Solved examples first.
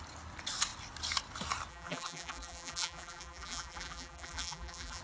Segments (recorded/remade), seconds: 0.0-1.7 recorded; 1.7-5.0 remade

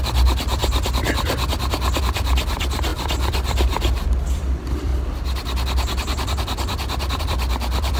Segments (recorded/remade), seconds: 0.0-0.6 remade; 0.6-2.0 recorded; 2.0-4.9 remade; 4.9-7.2 recorded; 7.2-8.0 remade

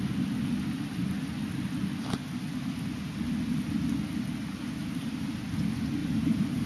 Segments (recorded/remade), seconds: 0.0-6.0 recorded; 6.0-6.7 remade

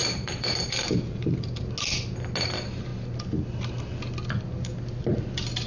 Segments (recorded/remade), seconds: 0.0-1.6 remade; 1.6-5.7 recorded

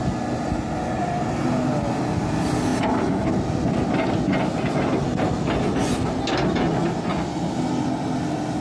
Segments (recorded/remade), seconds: 0.0-8.6 recorded

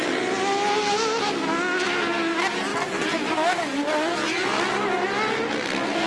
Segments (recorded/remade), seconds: 0.0-6.1 recorded

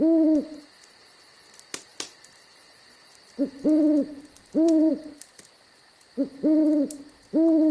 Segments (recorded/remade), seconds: 0.0-1.9 recorded; 1.9-4.9 remade; 4.9-7.7 recorded